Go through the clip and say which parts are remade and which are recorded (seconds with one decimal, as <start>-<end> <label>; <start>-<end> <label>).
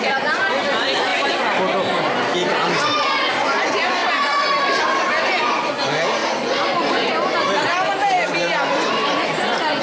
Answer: 0.0-9.8 recorded